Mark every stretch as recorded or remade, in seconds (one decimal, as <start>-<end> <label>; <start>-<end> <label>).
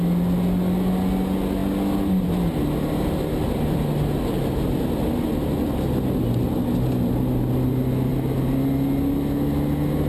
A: 0.0-10.1 recorded